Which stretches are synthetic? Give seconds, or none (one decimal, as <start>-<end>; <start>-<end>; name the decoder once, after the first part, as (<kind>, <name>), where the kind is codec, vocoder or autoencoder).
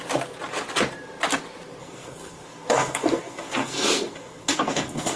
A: 1.8-5.2 (codec, SNAC)